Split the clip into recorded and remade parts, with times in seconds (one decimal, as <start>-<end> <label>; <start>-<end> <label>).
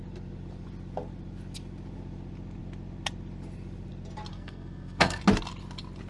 0.0-4.3 recorded; 4.3-5.2 remade; 5.2-6.1 recorded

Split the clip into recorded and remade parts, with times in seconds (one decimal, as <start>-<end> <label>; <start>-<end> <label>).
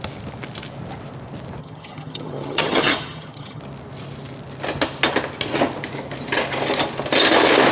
0.0-1.6 recorded; 1.6-3.6 remade; 3.6-7.7 recorded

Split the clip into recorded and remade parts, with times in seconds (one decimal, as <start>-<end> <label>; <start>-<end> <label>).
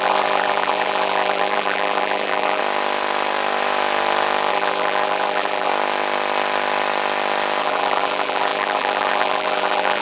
0.0-2.6 remade; 2.6-4.5 recorded; 4.5-5.7 remade; 5.7-7.6 recorded; 7.6-10.0 remade